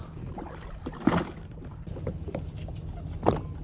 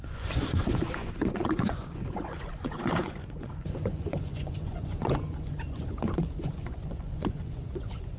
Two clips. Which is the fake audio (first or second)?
second